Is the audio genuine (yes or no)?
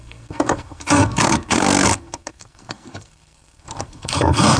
no